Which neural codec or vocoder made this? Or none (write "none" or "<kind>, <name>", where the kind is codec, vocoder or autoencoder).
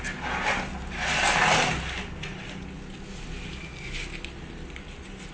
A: none